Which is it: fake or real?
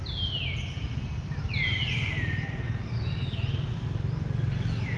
real